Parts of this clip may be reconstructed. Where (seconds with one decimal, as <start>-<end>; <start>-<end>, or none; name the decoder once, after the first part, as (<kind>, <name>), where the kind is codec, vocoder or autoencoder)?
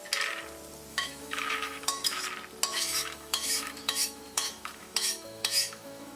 0.9-2.2 (autoencoder, DAC-VAE); 2.7-6.2